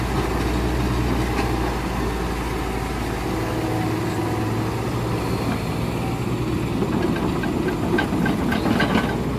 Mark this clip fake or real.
real